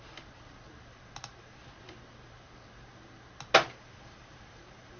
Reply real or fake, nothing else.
real